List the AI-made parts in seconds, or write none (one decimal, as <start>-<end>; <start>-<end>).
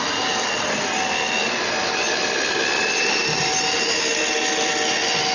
2.8-3.4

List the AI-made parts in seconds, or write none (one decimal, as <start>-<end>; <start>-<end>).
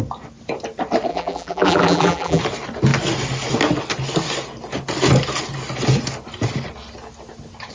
1.1-2.4